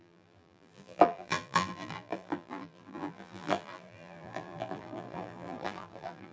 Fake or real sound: fake